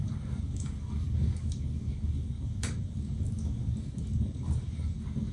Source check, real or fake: fake